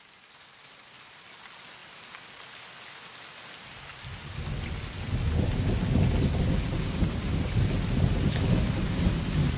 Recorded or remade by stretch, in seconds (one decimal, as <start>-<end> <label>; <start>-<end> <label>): 0.0-9.6 recorded